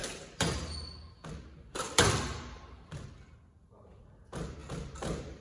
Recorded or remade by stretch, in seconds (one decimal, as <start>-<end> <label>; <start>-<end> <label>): 0.0-5.4 recorded